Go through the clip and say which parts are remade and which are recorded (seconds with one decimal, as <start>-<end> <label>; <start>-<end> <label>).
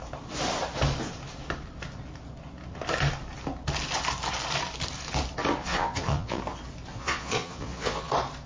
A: 0.0-5.6 recorded; 5.6-6.4 remade; 6.4-6.9 recorded; 6.9-8.1 remade; 8.1-8.5 recorded